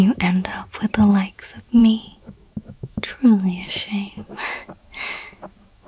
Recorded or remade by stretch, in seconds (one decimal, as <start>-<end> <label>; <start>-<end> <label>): 0.0-0.5 remade; 0.5-1.1 recorded; 1.1-5.9 remade